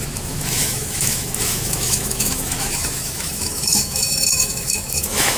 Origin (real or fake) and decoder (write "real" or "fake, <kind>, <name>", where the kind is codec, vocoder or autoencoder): fake, autoencoder, DAC-VAE